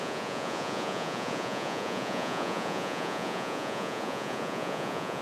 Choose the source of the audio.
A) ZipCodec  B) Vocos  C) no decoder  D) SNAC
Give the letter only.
B